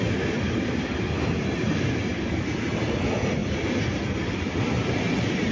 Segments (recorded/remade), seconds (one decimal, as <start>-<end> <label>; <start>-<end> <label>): 0.0-3.4 recorded; 3.4-4.3 remade; 4.3-5.5 recorded